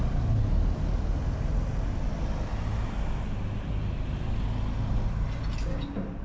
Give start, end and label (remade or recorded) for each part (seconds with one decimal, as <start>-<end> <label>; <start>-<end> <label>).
0.0-6.2 recorded